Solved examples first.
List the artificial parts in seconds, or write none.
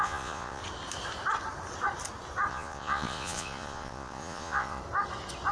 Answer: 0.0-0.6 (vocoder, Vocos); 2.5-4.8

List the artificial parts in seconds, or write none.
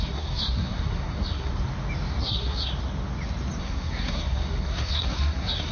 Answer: 0.0-1.5 (codec, SNAC); 2.2-2.7; 3.6-5.7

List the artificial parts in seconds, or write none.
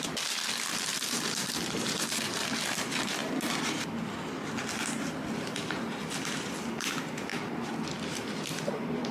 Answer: 0.9-2.0 (vocoder, BigVGAN v2); 7.3-8.3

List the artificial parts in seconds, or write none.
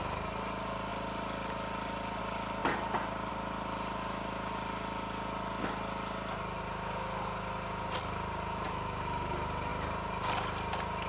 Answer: none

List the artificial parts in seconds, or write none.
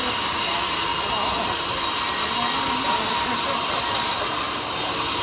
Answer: 0.0-5.2 (vocoder, BigVGAN v2)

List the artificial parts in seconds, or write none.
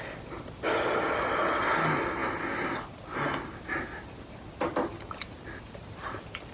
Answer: none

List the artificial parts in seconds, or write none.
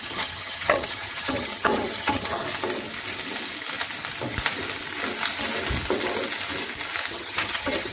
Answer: 0.0-2.4 (vocoder, HiFi-GAN); 7.1-7.9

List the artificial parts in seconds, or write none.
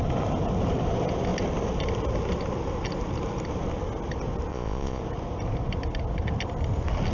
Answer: 4.5-5.0 (vocoder, Vocos)